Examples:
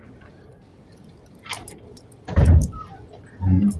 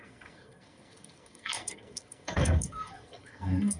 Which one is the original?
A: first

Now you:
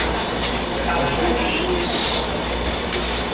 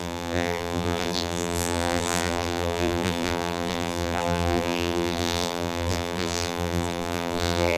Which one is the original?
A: first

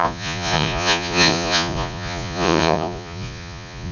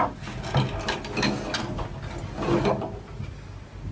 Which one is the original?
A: second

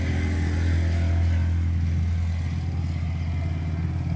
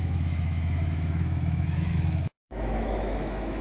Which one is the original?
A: first